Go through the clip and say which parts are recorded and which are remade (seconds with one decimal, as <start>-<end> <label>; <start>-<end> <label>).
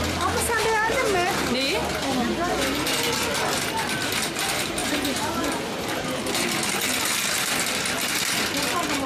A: 0.0-4.8 recorded; 4.8-5.7 remade; 5.7-9.1 recorded